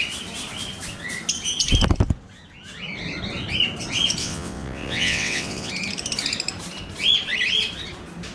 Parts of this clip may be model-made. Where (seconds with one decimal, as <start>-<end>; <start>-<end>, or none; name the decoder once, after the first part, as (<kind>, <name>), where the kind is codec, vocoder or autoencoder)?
4.2-5.7 (vocoder, WaveNeXt)